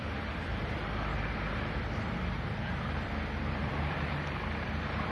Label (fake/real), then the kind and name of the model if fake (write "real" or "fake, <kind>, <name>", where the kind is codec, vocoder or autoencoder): fake, vocoder, BigVGAN v2